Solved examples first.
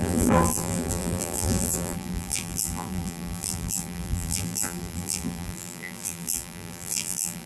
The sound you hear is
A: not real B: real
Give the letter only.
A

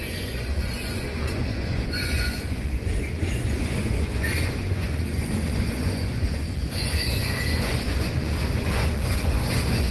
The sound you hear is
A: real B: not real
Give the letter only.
B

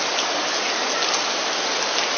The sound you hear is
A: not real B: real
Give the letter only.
B